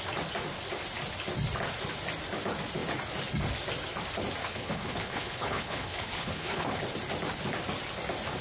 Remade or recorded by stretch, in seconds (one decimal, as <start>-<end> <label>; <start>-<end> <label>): 0.0-4.4 recorded; 4.4-6.8 remade; 6.8-8.4 recorded